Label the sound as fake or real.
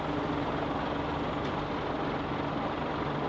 real